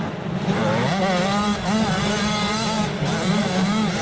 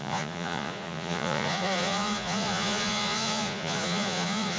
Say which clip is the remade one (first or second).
second